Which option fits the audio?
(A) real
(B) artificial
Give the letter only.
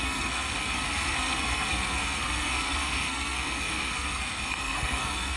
B